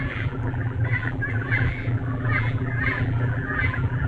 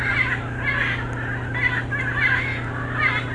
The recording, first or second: second